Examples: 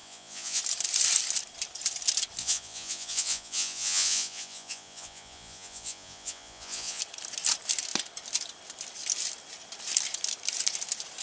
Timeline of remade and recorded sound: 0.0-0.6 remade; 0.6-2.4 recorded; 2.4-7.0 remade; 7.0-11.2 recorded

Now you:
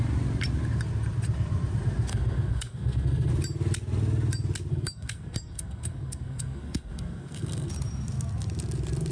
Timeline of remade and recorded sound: 0.0-2.1 recorded; 2.1-3.3 remade; 3.3-4.7 recorded; 4.7-7.7 remade; 7.7-9.1 recorded

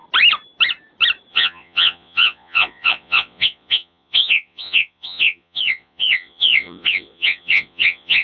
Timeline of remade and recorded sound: 0.0-1.3 recorded; 1.3-8.2 remade

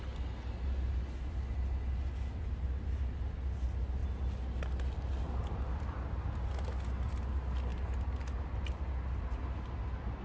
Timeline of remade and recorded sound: 0.0-10.2 recorded